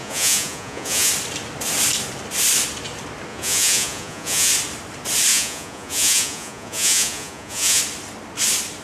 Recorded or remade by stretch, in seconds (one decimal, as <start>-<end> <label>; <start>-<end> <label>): 0.0-1.1 remade; 1.1-3.3 recorded; 3.3-4.5 remade; 4.5-5.3 recorded; 5.3-7.8 remade; 7.8-8.8 recorded